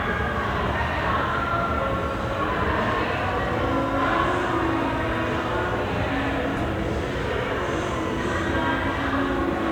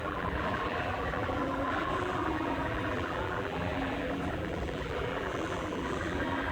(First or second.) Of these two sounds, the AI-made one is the second